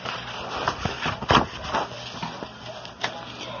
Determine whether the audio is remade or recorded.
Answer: recorded